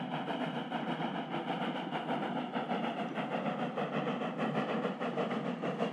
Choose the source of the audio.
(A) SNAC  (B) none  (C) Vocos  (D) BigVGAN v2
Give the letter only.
B